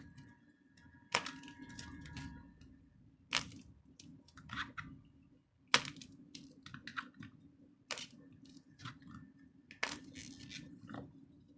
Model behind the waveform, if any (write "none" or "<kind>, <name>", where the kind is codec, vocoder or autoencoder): none